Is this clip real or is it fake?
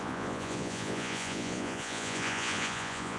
fake